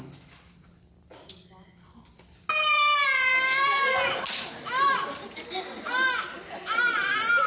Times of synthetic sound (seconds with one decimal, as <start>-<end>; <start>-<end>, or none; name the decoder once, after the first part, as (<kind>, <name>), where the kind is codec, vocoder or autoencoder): none